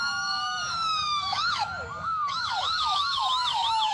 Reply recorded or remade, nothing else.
remade